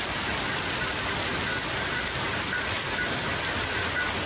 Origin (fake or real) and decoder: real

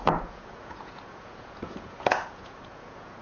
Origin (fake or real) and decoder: fake, vocoder, Vocos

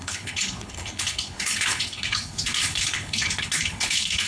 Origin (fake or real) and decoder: fake, codec, HILCodec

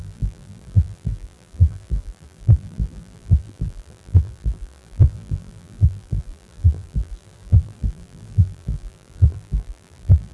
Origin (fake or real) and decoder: fake, vocoder, BigVGAN v2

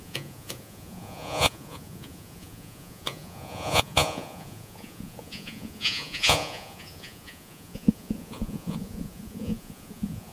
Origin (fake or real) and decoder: fake, vocoder, Vocos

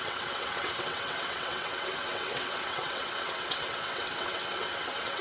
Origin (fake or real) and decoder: fake, vocoder, WaveNeXt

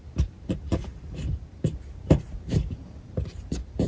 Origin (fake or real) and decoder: fake, vocoder, BigVGAN v2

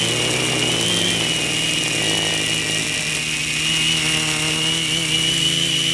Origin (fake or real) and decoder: real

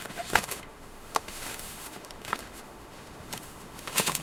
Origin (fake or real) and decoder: fake, autoencoder, DAC-VAE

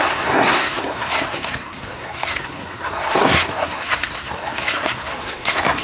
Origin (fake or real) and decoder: fake, codec, SNAC